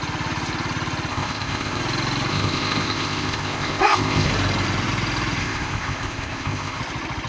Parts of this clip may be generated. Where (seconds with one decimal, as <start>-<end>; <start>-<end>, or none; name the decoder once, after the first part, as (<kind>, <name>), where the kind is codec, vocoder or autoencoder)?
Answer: 1.1-1.8 (codec, ZipCodec); 2.3-4.3; 5.4-6.8

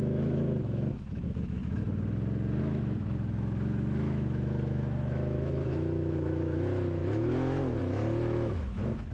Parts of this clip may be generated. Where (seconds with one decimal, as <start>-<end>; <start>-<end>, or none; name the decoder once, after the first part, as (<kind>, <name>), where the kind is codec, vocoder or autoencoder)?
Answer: 0.0-1.6 (autoencoder, DAC-VAE); 2.6-9.1

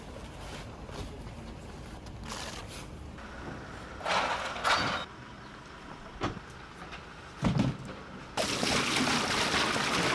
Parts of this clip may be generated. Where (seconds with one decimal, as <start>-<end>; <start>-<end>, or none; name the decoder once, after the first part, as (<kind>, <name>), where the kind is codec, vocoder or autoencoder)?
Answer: none

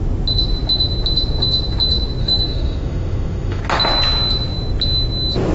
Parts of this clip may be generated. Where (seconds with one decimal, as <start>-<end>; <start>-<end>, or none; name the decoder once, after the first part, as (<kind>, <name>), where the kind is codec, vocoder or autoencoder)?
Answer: 2.2-3.6 (autoencoder, DAC-VAE)

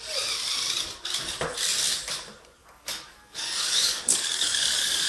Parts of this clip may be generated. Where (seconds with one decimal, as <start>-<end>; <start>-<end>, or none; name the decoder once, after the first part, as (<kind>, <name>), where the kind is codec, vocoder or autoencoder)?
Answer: 2.6-5.1 (codec, DAC)

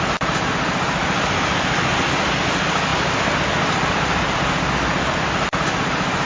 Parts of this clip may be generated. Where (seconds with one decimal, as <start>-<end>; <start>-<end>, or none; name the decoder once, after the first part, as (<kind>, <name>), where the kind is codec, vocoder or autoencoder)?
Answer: none

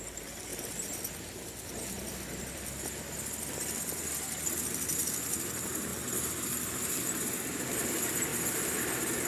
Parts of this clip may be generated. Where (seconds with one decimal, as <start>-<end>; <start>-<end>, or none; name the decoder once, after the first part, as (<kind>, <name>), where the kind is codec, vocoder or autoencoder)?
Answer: 0.0-0.5 (vocoder, BigVGAN v2); 2.4-5.9; 6.9-8.3

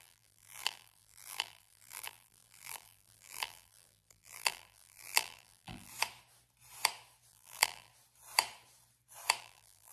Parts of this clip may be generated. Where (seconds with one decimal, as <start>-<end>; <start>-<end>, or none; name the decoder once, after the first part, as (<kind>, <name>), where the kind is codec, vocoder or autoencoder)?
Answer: 0.0-5.9 (vocoder, BigVGAN v2); 7.3-7.9; 9.4-9.9